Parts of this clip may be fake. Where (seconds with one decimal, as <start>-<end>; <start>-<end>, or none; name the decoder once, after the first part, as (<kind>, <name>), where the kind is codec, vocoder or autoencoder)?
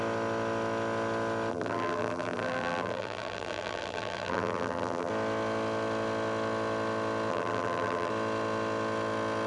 1.5-5.1 (vocoder, BigVGAN v2); 7.3-8.1